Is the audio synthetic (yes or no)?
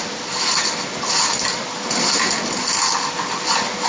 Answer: no